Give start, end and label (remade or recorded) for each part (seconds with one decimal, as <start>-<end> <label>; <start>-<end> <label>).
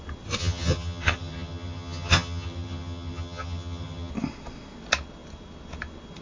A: 0.0-0.4 recorded; 0.4-4.1 remade; 4.1-6.2 recorded